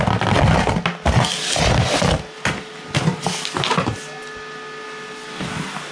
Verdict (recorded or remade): recorded